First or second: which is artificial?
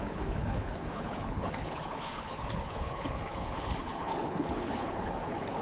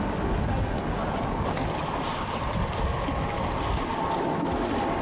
first